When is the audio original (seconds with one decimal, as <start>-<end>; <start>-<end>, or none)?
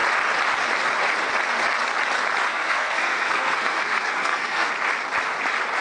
0.0-2.5; 4.7-5.8